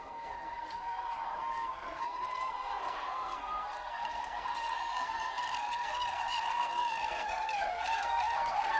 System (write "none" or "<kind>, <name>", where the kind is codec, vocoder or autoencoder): codec, SNAC